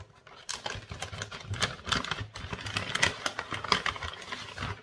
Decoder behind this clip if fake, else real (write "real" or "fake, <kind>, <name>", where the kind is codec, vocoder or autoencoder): real